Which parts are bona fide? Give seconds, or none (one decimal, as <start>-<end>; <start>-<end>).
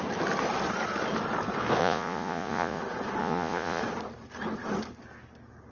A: 0.0-1.8; 2.8-3.2; 3.8-5.7